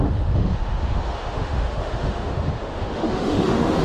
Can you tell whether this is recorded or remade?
remade